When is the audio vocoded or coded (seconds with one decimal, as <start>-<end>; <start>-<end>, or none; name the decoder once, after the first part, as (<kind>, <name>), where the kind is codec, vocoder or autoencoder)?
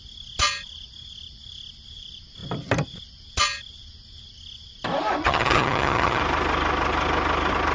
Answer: 5.2-6.2 (vocoder, HiFi-GAN)